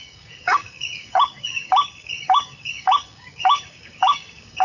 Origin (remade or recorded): remade